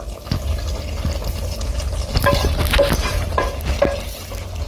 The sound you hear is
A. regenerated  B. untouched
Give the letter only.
B